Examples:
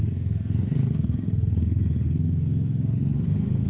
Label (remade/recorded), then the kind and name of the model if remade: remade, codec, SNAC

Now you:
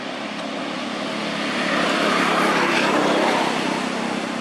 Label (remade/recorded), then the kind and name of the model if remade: recorded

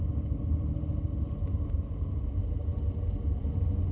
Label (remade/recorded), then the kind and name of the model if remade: recorded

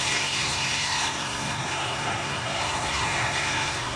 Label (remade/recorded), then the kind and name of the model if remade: remade, codec, SNAC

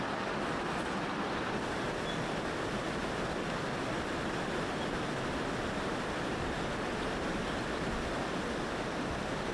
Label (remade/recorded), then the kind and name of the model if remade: recorded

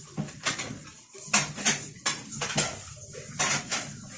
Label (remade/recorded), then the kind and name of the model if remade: recorded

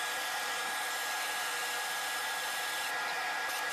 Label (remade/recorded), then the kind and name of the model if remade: recorded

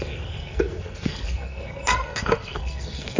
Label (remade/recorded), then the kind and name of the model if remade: remade, codec, SNAC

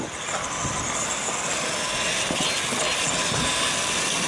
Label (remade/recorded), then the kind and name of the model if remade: recorded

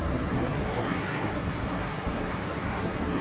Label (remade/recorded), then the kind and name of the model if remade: remade, codec, SNAC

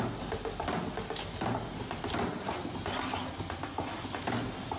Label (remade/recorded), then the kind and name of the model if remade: recorded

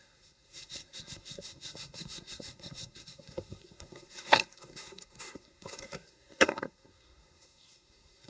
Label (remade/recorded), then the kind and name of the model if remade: remade, codec, SNAC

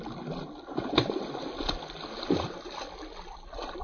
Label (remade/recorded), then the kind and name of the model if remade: recorded